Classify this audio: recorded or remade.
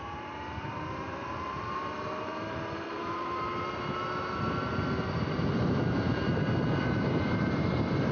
remade